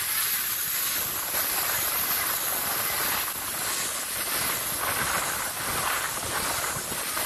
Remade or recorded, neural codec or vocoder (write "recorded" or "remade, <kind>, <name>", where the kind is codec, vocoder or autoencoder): recorded